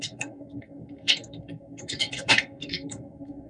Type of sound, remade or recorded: remade